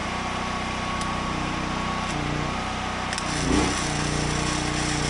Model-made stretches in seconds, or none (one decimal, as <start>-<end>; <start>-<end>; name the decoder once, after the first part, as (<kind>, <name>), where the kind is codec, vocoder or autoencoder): 0.0-1.6 (vocoder, BigVGAN v2)